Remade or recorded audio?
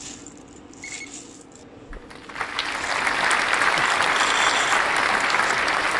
recorded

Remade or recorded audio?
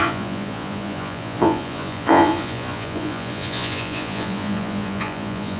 remade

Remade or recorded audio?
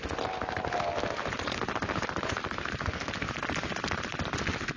recorded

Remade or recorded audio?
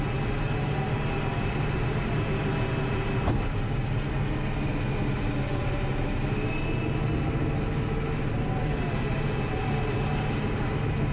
recorded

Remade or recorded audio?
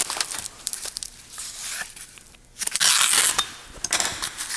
recorded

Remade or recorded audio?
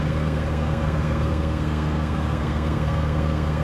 remade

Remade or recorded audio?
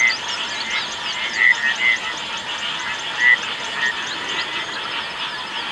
recorded